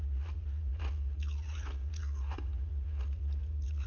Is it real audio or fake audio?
fake